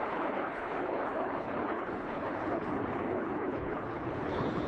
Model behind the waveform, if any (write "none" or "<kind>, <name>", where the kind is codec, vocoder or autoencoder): codec, HILCodec